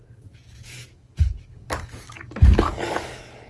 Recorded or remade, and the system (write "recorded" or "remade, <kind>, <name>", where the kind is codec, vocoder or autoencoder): remade, codec, DAC